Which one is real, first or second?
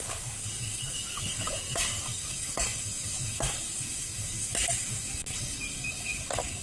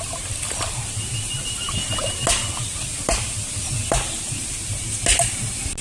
second